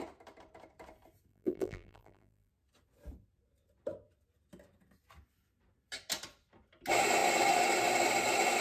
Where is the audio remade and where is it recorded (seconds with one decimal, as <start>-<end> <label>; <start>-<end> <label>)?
0.0-1.3 recorded; 1.3-2.5 remade; 2.5-8.6 recorded